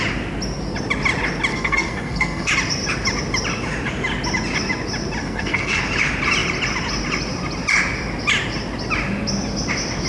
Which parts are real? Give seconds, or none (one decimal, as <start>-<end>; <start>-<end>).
0.0-1.5; 2.5-5.2; 5.8-10.1